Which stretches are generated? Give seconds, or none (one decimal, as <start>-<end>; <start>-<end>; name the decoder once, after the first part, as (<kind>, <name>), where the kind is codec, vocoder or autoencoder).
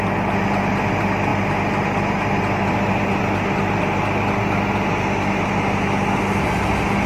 none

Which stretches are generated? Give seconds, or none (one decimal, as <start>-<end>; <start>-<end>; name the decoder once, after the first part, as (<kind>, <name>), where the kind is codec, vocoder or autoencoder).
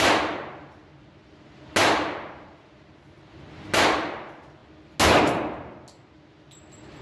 none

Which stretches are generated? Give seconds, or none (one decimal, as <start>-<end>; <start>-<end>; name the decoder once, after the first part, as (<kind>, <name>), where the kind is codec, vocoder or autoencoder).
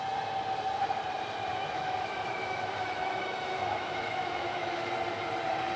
1.5-4.9 (autoencoder, DAC-VAE)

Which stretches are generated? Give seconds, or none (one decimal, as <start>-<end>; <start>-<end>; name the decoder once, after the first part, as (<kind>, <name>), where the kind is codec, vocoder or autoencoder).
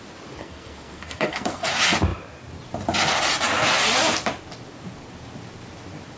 0.4-1.7 (codec, SNAC)